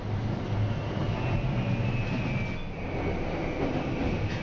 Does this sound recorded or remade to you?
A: recorded